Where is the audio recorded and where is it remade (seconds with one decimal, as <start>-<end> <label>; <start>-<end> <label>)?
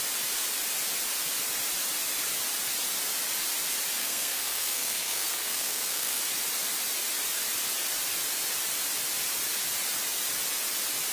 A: 0.0-4.0 recorded; 4.0-6.2 remade; 6.2-11.1 recorded